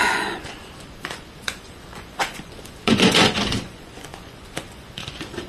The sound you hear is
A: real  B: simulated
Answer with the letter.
B